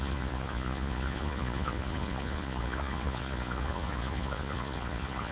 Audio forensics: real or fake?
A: fake